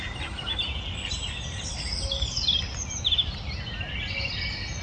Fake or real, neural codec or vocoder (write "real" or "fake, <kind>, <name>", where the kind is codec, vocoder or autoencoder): real